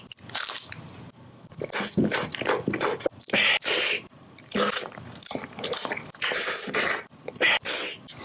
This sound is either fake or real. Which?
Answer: real